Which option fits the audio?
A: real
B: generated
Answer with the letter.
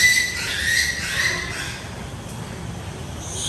A